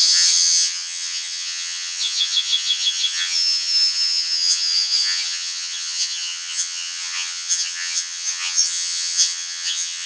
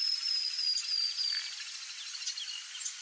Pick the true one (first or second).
second